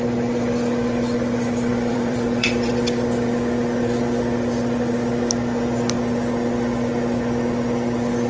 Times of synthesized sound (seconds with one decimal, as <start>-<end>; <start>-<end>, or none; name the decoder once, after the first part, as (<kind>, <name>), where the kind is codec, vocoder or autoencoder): 1.7-2.7 (vocoder, BigVGAN v2)